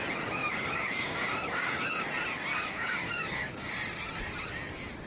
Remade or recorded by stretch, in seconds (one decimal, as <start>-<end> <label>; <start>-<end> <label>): 0.0-0.4 recorded; 0.4-2.1 remade; 2.1-2.5 recorded; 2.5-3.7 remade; 3.7-5.1 recorded